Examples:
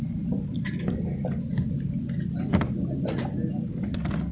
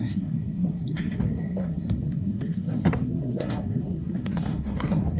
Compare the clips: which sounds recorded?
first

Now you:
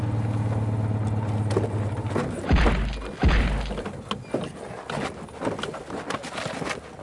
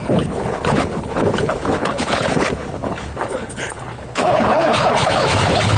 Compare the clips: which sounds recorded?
first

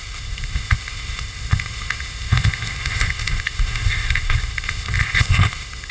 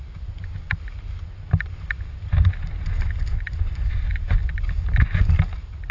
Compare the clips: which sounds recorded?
second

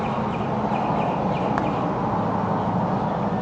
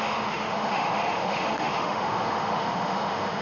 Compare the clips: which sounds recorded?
first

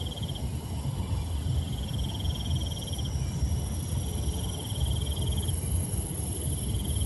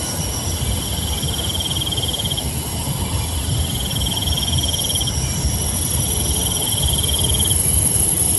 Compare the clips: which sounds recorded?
first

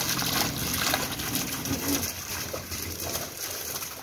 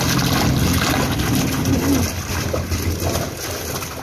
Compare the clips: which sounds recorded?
second